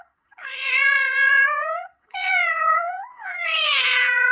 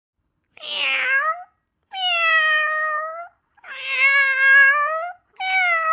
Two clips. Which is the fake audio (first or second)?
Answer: first